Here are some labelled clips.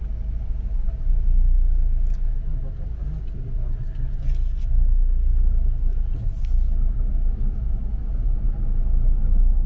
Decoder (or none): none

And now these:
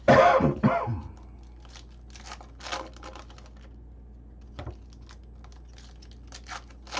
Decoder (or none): none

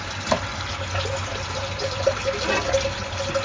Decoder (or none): none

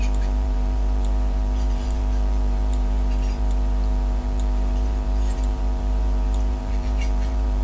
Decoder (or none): vocoder, BigVGAN v2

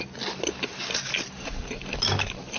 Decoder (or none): none